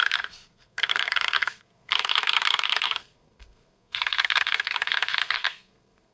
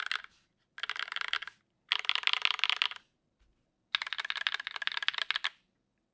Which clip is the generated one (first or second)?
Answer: first